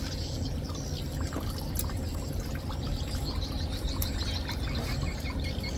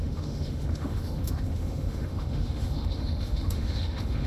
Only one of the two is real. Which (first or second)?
first